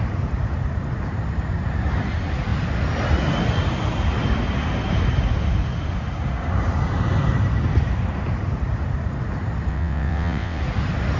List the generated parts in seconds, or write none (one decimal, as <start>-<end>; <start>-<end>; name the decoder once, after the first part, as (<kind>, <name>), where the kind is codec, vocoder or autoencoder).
9.7-10.6 (vocoder, WaveNeXt)